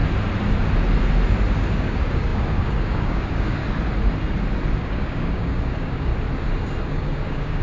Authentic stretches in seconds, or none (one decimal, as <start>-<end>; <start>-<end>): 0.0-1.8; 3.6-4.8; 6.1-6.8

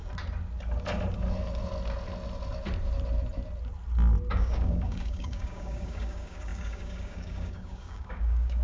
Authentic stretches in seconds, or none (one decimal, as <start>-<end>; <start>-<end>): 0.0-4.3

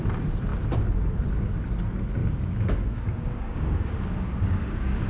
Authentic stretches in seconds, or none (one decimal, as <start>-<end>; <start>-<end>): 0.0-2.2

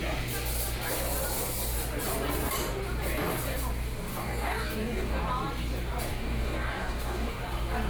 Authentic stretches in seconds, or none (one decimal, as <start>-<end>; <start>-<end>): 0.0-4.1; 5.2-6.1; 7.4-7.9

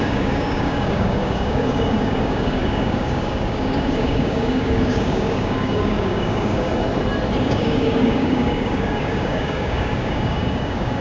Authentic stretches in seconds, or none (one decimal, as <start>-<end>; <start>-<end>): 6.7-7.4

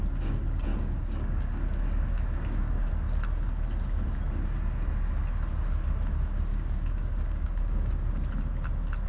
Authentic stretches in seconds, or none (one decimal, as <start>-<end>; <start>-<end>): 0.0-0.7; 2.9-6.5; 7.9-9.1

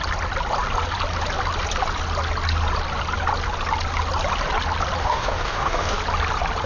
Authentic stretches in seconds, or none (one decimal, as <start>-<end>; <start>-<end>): 0.0-5.0; 6.0-6.7